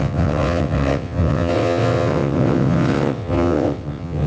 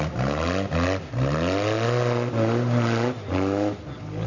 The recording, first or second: second